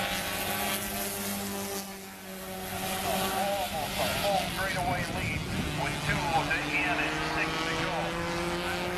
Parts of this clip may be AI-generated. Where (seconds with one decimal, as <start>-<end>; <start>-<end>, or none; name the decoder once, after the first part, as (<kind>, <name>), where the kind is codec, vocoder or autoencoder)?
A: none